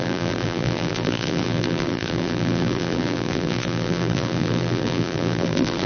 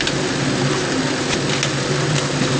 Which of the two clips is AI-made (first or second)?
first